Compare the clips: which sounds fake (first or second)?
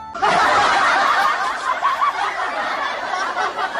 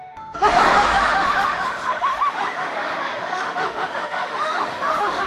second